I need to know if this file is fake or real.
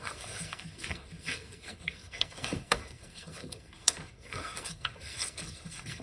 fake